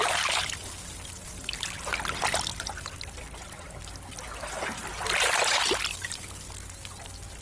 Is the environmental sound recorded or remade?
recorded